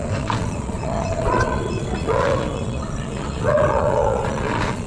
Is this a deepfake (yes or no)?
yes